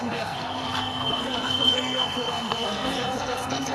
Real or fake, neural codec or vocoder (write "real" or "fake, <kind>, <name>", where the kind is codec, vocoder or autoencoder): fake, codec, SNAC